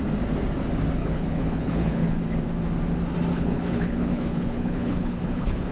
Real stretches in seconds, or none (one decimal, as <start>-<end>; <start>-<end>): 0.0-1.0; 2.2-3.3